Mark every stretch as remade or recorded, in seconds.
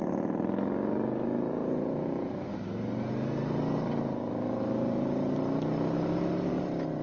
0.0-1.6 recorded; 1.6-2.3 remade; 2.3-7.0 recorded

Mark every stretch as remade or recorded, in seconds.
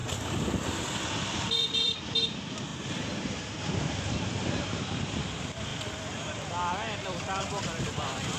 0.0-1.4 recorded; 1.4-2.7 remade; 2.7-4.6 recorded; 4.6-8.4 remade